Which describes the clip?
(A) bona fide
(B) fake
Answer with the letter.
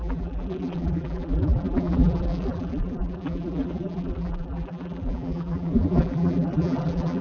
B